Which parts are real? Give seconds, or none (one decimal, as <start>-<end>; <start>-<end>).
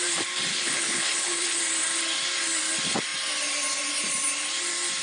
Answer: 0.0-0.5; 1.6-5.0